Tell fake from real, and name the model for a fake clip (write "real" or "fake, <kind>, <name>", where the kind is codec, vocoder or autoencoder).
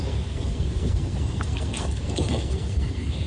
fake, codec, SNAC